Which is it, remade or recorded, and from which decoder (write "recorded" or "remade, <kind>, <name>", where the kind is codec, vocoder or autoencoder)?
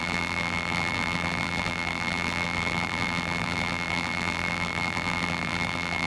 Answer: remade, vocoder, BigVGAN v2